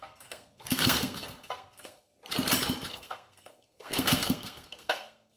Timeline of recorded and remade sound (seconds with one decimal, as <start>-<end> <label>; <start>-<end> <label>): 0.0-2.1 remade; 2.1-2.9 recorded; 2.9-5.4 remade